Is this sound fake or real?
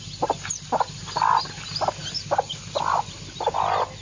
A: real